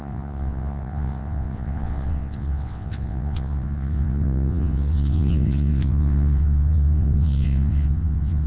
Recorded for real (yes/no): no